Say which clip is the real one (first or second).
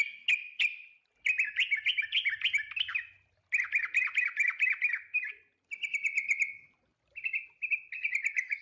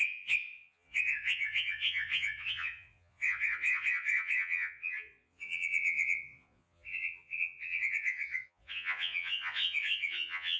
first